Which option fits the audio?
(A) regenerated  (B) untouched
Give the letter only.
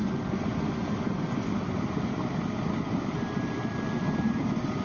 B